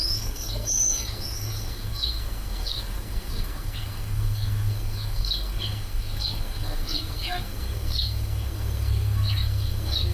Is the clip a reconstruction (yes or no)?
yes